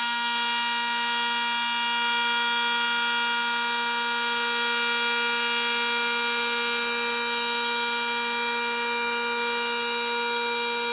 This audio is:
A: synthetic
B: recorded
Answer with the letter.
B